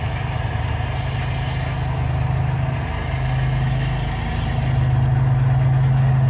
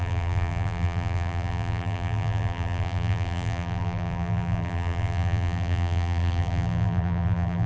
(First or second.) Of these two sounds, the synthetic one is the second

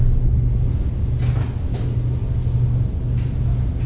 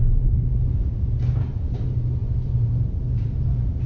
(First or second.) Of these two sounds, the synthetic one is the second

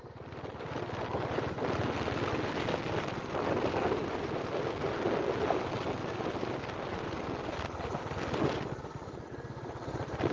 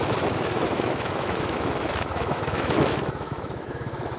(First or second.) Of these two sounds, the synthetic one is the second